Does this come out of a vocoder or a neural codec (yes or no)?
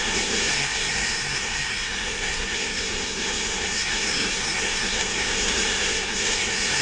yes